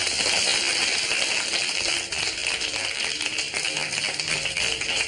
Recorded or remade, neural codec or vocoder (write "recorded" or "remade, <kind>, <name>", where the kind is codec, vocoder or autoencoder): recorded